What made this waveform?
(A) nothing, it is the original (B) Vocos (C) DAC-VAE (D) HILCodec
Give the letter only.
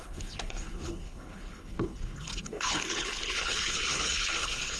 D